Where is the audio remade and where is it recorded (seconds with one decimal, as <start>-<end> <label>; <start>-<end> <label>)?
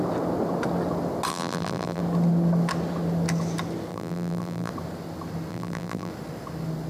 0.0-1.3 recorded; 1.3-2.0 remade; 2.0-3.9 recorded; 3.9-4.7 remade; 4.7-5.5 recorded; 5.5-6.1 remade; 6.1-6.9 recorded